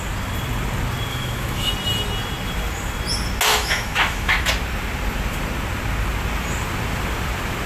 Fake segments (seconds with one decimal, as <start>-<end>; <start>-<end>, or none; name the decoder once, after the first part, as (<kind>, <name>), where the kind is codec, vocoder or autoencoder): 1.1-1.7 (autoencoder, DAC-VAE); 3.5-4.5